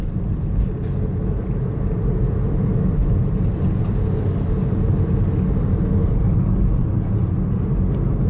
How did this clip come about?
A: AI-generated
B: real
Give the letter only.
B